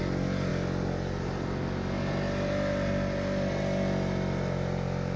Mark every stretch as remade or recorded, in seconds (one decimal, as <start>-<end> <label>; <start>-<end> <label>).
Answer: 0.0-5.2 recorded